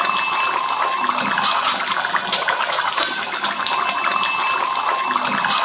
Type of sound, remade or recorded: recorded